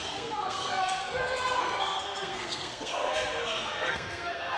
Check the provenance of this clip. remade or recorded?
remade